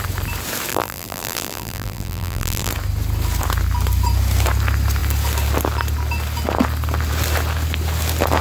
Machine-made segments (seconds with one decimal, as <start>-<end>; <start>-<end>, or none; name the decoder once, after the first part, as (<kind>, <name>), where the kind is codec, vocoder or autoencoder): 0.7-2.7 (vocoder, BigVGAN v2)